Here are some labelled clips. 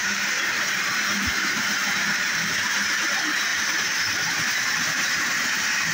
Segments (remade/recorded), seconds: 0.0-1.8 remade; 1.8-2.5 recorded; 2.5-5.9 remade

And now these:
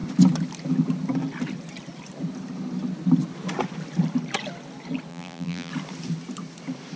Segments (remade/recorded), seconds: 0.0-5.1 recorded; 5.1-5.7 remade; 5.7-7.0 recorded

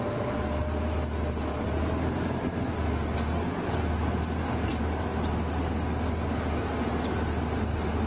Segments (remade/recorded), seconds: 0.0-8.1 recorded

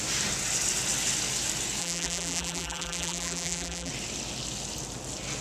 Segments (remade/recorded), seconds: 0.0-1.8 recorded; 1.8-3.9 remade; 3.9-5.4 recorded

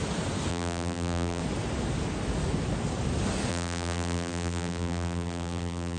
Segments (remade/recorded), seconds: 0.0-0.5 recorded; 0.5-1.4 remade; 1.4-3.5 recorded; 3.5-6.0 remade

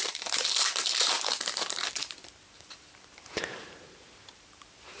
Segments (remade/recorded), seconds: 0.0-2.0 remade; 2.0-2.6 recorded; 2.6-5.0 remade

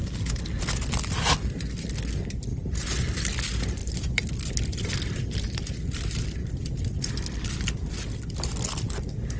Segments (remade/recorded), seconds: 0.0-2.5 recorded; 2.5-3.2 remade; 3.2-3.8 recorded; 3.8-4.3 remade; 4.3-6.4 recorded; 6.4-7.1 remade; 7.1-9.4 recorded

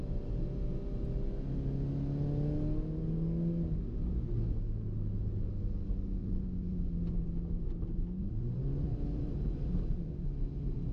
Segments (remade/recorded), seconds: 0.0-6.2 recorded; 6.2-7.2 remade; 7.2-8.2 recorded; 8.2-9.4 remade; 9.4-10.9 recorded